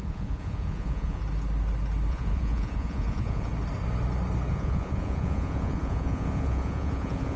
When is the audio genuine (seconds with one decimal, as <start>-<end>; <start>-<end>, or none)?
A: 1.2-2.1; 3.5-4.5